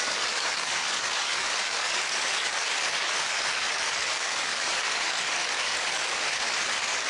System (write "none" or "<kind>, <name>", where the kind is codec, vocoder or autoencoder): codec, DAC